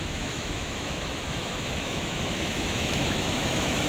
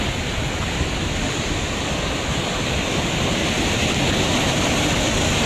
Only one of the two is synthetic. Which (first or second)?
first